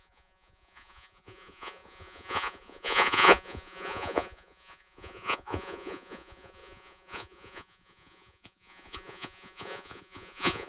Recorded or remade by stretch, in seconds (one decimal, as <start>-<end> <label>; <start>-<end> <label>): 0.0-10.7 remade